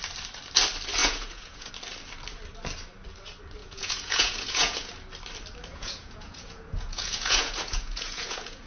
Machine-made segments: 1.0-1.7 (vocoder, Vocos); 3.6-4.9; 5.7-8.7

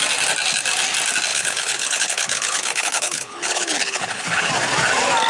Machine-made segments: 1.3-4.5 (codec, HILCodec)

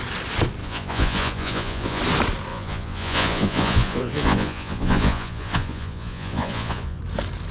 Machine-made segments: 0.6-2.0 (vocoder, Vocos); 2.5-7.0

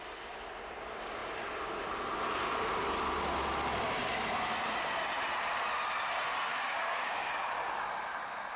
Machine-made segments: 6.5-7.3 (codec, DAC)

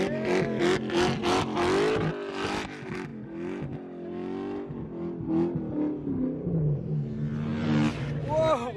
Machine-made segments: none

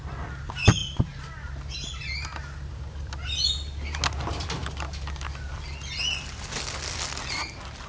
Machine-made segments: none

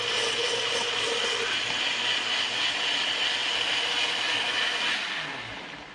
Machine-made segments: none

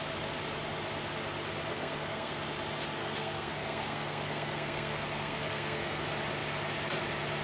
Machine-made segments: 1.7-2.4 (codec, SNAC); 3.0-6.0